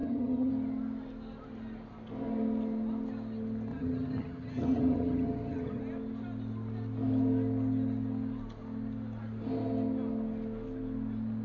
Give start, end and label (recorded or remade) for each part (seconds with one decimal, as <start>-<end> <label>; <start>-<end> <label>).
0.0-0.5 remade; 0.5-3.7 recorded; 3.7-5.8 remade; 5.8-11.4 recorded